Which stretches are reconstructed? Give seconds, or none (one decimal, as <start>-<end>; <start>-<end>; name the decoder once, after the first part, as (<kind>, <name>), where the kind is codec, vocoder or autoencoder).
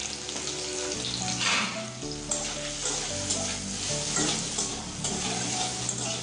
none